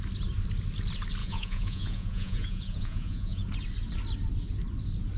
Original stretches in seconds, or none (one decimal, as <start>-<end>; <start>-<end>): 0.0-1.2; 3.5-5.2